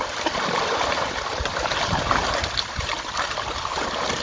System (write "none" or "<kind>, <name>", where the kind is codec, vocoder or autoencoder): none